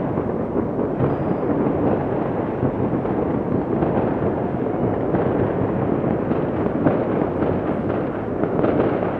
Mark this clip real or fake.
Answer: real